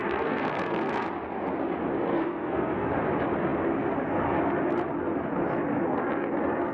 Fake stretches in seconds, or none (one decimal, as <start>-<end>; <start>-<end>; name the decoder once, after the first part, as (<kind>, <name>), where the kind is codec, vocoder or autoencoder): 0.0-0.9 (codec, SNAC); 2.1-2.9